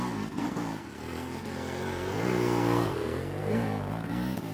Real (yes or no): no